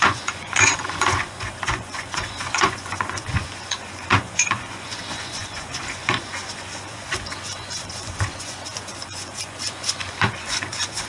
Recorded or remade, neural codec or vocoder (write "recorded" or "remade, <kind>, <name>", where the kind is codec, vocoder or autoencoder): remade, vocoder, Vocos